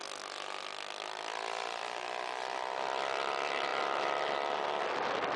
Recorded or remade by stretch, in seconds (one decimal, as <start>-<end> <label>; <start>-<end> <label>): 0.0-1.8 recorded; 1.8-3.7 remade; 3.7-5.4 recorded